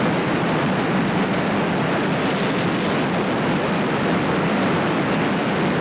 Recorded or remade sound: recorded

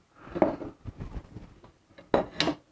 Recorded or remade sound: recorded